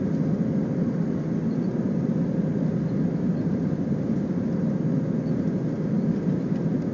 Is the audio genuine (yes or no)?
yes